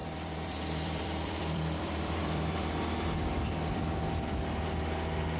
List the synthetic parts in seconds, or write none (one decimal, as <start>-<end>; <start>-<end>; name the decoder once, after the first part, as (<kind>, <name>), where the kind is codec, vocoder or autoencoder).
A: 0.0-2.8 (vocoder, BigVGAN v2)